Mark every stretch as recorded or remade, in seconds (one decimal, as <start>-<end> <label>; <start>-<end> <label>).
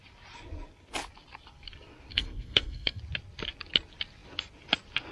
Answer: 0.0-2.1 recorded; 2.1-3.0 remade; 3.0-5.1 recorded